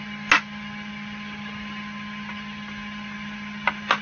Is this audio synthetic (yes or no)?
no